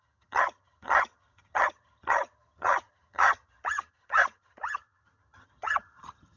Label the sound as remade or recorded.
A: remade